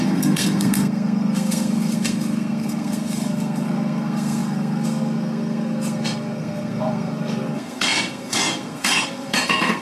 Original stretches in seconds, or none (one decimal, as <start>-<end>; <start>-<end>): none